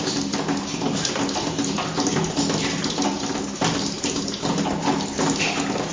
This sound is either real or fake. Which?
real